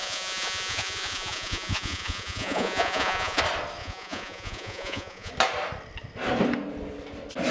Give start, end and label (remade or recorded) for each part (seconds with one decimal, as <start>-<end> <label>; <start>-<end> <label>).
0.0-3.4 remade; 3.4-3.8 recorded; 3.8-5.3 remade; 5.3-7.5 recorded